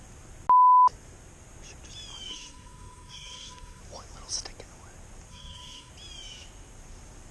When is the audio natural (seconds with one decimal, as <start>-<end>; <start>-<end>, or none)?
0.0-2.3; 3.8-5.3; 5.9-7.3